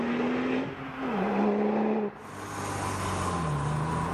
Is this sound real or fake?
real